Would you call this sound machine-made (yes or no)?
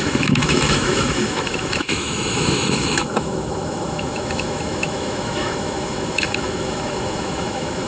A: yes